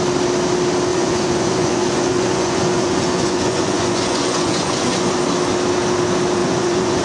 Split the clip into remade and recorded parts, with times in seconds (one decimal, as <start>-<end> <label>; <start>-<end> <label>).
0.0-0.9 recorded; 0.9-5.1 remade; 5.1-6.4 recorded; 6.4-7.0 remade